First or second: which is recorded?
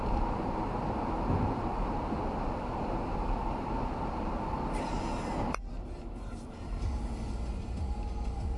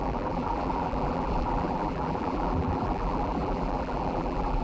first